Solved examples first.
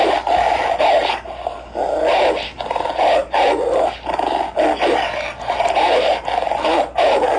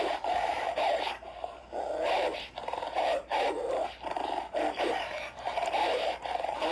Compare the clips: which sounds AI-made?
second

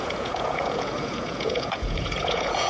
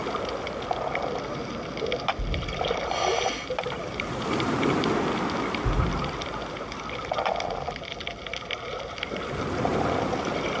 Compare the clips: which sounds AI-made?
first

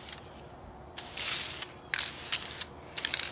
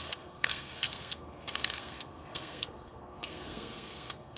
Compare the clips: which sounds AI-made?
second